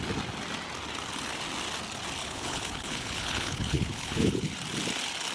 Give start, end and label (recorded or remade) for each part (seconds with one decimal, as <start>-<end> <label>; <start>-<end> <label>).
0.0-2.2 recorded; 2.2-4.5 remade; 4.5-5.3 recorded